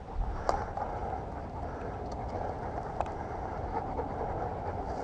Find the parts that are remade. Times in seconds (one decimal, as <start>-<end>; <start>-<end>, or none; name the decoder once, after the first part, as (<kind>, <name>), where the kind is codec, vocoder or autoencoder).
none